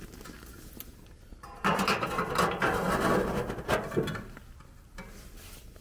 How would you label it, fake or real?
real